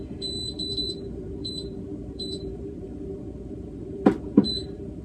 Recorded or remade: remade